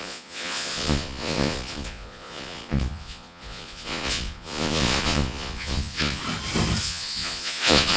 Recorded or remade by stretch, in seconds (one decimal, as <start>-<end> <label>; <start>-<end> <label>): 0.0-6.2 remade; 6.2-6.8 recorded; 6.8-8.0 remade